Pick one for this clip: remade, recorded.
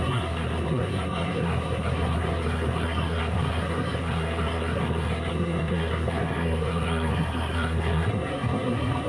remade